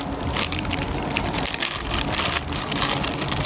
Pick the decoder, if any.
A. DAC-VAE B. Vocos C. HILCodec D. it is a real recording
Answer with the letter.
D